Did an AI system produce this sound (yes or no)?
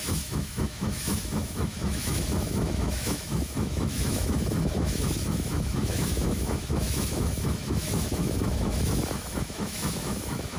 yes